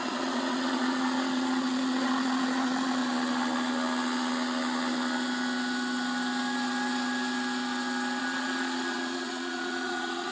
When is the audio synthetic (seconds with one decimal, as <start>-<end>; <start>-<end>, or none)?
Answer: 0.0-3.0; 8.2-10.3